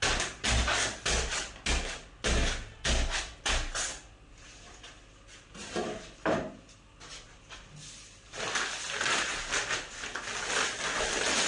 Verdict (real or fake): real